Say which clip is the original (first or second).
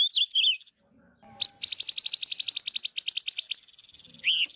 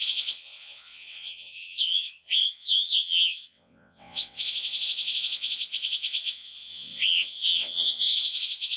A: first